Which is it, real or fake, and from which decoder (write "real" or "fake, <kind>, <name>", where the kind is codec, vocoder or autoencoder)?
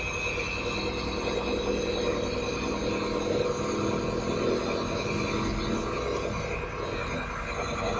real